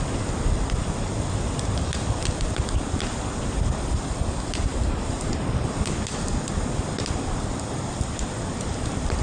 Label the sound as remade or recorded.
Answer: recorded